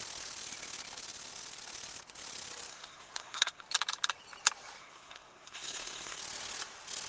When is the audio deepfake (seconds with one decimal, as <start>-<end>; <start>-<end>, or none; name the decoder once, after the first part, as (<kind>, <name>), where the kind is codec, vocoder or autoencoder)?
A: 2.7-3.6 (codec, SNAC); 4.8-6.2